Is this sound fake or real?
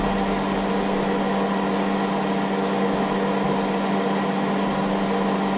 real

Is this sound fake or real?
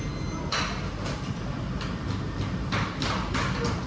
real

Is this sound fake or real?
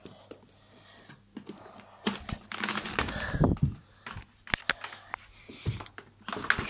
real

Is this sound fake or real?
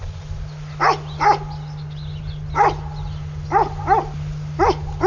real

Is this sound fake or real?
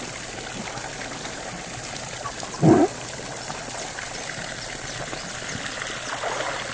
real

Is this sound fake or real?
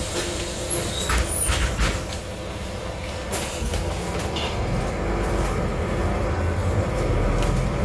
real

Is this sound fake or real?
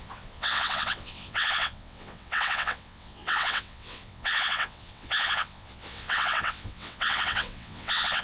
fake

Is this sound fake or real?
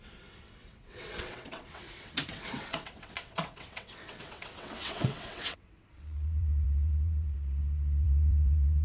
fake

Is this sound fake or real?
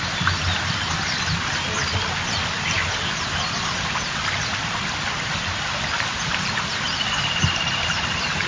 real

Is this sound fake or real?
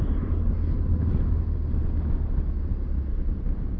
real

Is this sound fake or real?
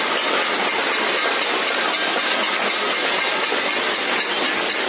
real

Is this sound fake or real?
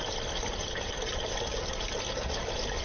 real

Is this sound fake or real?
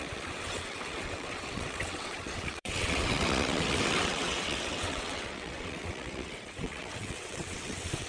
fake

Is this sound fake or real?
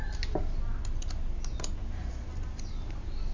real